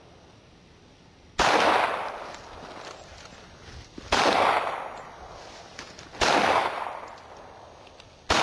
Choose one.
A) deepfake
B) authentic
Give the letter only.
B